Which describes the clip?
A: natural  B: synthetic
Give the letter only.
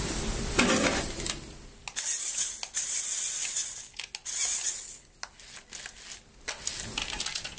A